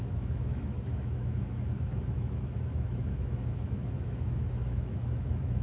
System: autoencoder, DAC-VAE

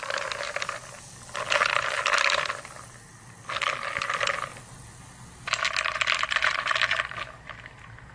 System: none